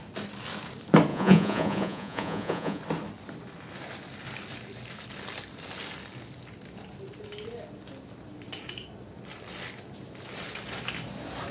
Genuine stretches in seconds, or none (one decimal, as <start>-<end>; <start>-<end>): 0.0-1.1; 2.8-11.5